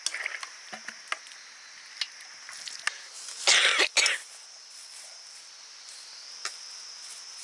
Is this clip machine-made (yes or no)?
no